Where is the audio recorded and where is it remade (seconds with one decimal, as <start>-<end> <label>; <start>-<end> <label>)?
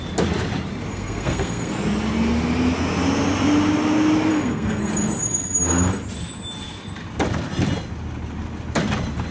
0.0-0.9 recorded; 0.9-1.7 remade; 1.7-4.3 recorded; 4.3-4.9 remade; 4.9-9.3 recorded